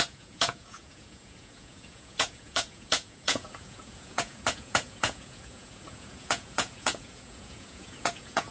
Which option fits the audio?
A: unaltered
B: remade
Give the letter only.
B